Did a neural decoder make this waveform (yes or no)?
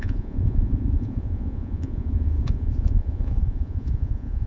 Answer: yes